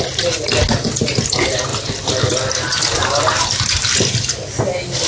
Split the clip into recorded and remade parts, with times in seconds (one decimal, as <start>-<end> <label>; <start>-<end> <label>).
0.0-5.1 recorded